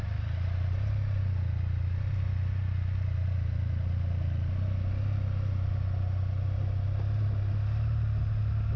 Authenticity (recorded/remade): recorded